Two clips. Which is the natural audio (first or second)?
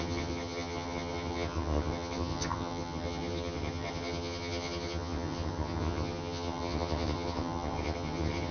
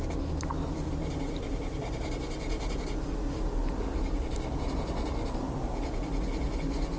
second